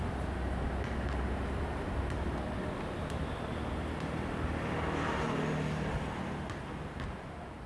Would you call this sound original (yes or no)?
yes